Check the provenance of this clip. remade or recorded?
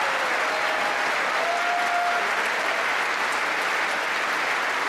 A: recorded